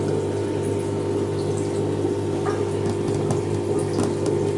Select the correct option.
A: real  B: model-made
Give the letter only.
A